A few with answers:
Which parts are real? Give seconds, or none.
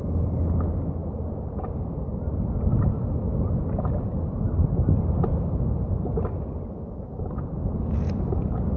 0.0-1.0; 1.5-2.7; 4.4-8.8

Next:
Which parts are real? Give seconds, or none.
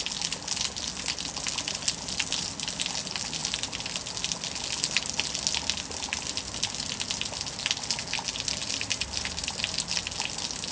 0.0-8.6; 9.6-10.7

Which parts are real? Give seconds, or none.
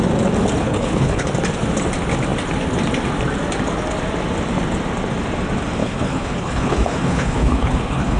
0.0-0.6; 1.3-5.8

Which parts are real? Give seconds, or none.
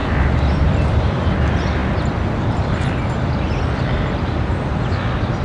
0.0-5.4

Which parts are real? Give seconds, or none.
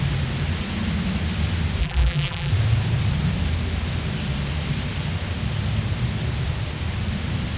0.0-1.8; 2.5-7.6